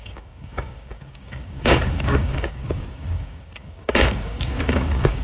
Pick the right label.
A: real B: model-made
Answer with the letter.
B